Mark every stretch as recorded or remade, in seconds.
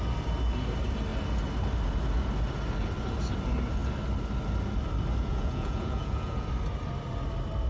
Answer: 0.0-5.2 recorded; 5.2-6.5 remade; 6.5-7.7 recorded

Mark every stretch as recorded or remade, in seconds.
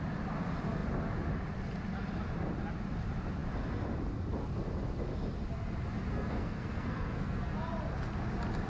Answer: 0.0-6.1 recorded; 6.1-7.5 remade; 7.5-8.7 recorded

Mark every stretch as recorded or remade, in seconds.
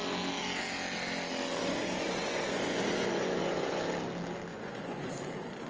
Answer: 0.0-1.6 recorded; 1.6-3.8 remade; 3.8-4.5 recorded; 4.5-5.1 remade; 5.1-5.7 recorded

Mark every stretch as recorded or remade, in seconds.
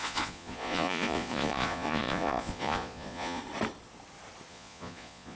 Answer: 0.0-3.4 remade; 3.4-4.5 recorded; 4.5-5.4 remade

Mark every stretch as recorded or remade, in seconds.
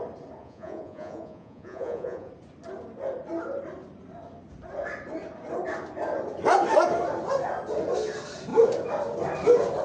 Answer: 0.0-0.4 recorded; 0.4-2.3 remade; 2.3-9.8 recorded